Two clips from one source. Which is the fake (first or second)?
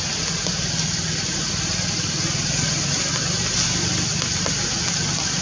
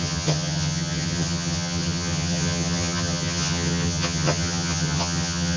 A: second